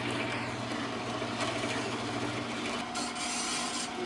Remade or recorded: recorded